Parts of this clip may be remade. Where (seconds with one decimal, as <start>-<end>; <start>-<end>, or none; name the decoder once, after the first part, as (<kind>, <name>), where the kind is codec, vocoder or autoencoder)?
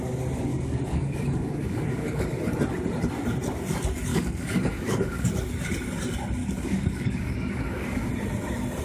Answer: 0.5-2.4 (codec, DAC); 4.1-5.3; 6.4-8.1